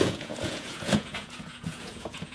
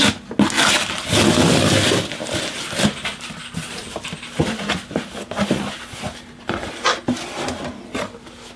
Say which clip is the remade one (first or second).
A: first